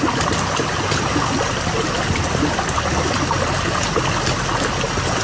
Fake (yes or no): no